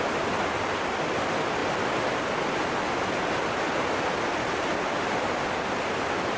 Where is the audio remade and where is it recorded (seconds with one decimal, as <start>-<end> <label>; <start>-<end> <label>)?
0.0-6.4 recorded

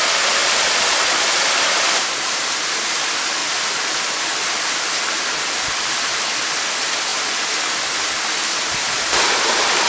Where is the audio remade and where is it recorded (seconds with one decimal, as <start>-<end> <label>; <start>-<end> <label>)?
0.0-9.9 recorded

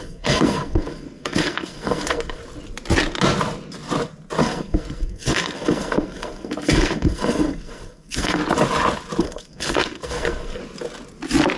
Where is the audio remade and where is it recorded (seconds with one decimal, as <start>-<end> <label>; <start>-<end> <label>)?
0.0-2.4 remade; 2.4-4.4 recorded; 4.4-8.4 remade; 8.4-9.2 recorded; 9.2-10.6 remade; 10.6-11.6 recorded